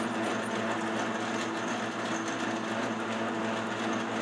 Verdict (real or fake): real